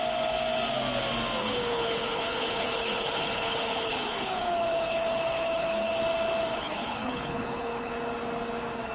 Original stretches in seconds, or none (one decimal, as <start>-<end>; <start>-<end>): 0.0-1.4; 6.0-6.5; 7.9-8.9